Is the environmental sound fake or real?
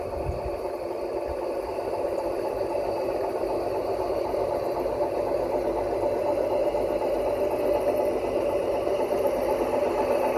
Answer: real